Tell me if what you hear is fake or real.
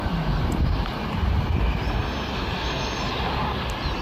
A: real